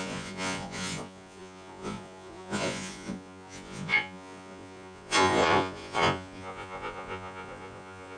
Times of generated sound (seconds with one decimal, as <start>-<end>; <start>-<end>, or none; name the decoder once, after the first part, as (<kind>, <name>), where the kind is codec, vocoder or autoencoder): 0.0-8.2 (vocoder, Vocos)